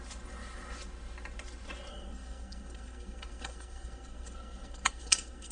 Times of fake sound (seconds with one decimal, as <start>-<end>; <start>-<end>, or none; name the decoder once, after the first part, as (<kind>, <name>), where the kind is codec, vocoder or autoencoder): 1.9-5.5 (codec, SNAC)